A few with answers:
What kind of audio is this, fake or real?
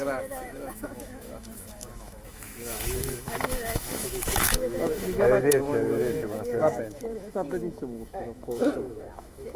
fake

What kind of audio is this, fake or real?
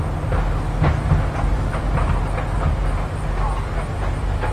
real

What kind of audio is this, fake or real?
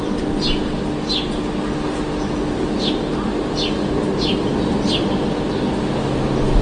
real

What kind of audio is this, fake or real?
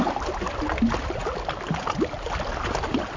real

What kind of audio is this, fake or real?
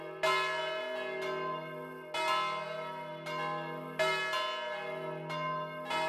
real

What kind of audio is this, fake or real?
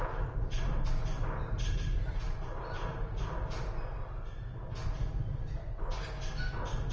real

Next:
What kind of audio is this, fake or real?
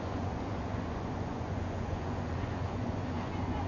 fake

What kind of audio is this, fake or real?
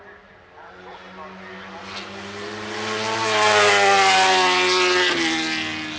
real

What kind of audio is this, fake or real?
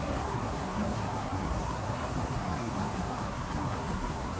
fake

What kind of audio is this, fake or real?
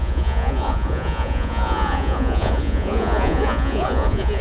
fake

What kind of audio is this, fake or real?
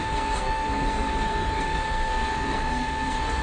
fake